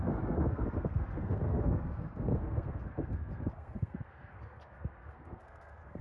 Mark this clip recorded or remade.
remade